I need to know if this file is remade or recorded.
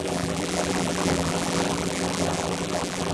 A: remade